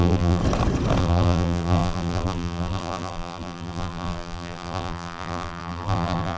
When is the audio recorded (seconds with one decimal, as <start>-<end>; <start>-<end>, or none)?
0.4-1.0